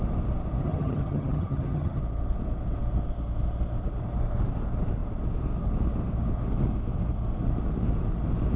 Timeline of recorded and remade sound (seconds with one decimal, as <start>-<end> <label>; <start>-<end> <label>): 0.0-0.6 recorded; 0.6-2.0 remade; 2.0-8.6 recorded